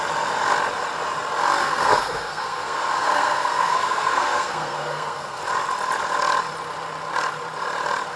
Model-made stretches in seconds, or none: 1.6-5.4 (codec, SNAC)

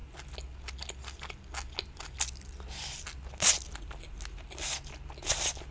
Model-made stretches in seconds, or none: none

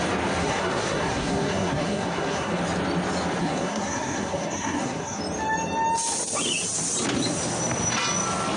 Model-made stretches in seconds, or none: 0.4-2.6 (codec, SNAC); 3.4-5.2